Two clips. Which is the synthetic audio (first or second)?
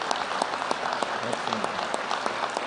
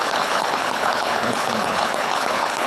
second